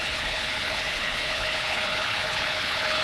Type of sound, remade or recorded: remade